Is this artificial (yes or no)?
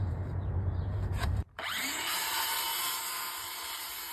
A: yes